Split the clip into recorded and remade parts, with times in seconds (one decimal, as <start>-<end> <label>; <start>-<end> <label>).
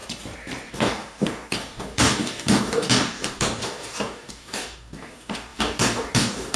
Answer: 0.0-0.7 recorded; 0.7-6.6 remade